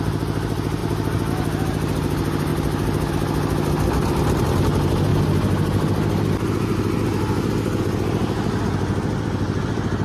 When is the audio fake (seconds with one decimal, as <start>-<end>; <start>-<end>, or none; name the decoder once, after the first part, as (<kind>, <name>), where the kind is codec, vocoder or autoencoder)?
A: none